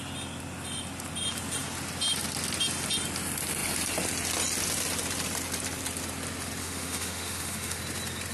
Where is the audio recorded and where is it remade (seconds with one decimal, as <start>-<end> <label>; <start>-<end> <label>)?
0.0-6.6 recorded; 6.6-7.8 remade; 7.8-8.3 recorded